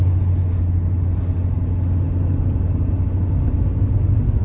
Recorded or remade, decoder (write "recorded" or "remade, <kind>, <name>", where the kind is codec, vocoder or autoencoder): recorded